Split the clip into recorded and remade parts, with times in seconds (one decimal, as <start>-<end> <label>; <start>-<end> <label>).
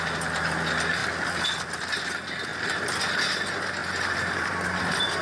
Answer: 0.0-1.0 recorded; 1.0-1.9 remade; 1.9-3.8 recorded; 3.8-4.8 remade; 4.8-5.2 recorded